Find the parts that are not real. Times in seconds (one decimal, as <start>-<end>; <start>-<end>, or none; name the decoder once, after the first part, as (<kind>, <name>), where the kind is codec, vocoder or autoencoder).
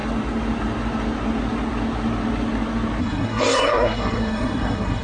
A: 3.0-5.0 (codec, SNAC)